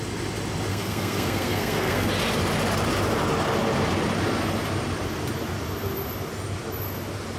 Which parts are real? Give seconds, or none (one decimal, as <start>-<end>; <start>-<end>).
0.0-0.7; 2.1-7.4

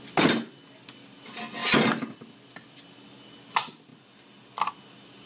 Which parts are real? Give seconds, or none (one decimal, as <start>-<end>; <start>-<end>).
0.0-5.3

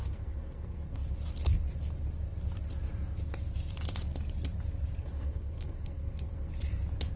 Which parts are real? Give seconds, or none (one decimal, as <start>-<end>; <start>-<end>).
1.0-5.0; 6.5-7.2

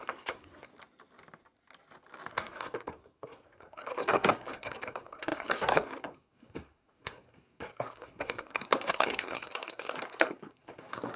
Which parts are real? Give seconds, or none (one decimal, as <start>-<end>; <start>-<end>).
0.7-2.3

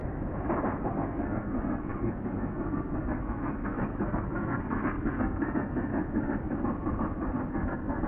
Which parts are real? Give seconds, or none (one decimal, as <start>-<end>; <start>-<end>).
0.0-0.9; 5.9-7.5